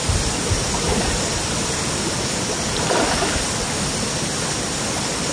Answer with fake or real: real